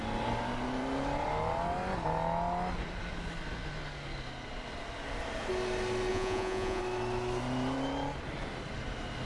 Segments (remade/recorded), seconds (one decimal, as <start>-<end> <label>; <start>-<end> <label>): 0.0-6.1 recorded; 6.1-6.8 remade; 6.8-9.3 recorded